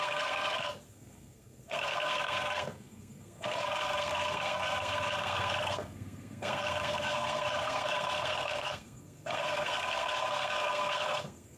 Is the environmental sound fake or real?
fake